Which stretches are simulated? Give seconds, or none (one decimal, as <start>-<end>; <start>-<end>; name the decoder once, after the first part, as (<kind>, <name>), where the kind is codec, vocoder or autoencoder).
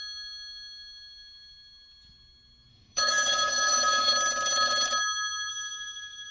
2.7-4.1 (codec, DAC); 5.5-6.3